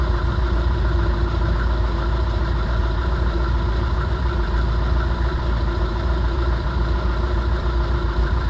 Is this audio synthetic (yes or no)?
yes